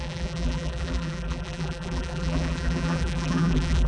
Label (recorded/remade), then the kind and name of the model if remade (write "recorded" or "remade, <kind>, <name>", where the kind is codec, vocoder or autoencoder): remade, vocoder, BigVGAN v2